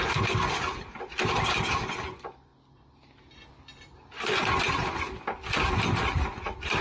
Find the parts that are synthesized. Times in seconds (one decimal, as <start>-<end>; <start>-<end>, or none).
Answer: none

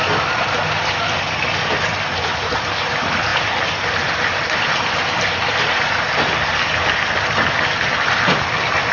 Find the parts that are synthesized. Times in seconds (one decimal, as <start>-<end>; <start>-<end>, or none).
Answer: none

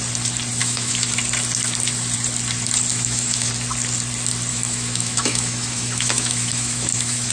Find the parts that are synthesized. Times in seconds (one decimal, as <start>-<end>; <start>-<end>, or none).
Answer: 0.6-1.1; 2.9-3.5; 4.5-7.3

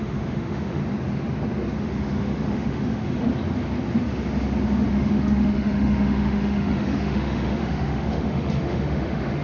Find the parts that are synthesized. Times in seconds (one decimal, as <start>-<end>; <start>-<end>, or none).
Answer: 0.0-0.8; 1.8-3.3; 4.9-9.4

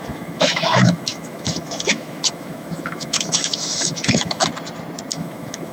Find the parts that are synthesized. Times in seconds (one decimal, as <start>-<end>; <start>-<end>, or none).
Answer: 0.0-4.5; 5.1-5.7